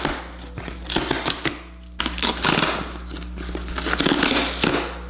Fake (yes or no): no